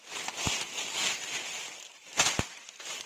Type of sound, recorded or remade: recorded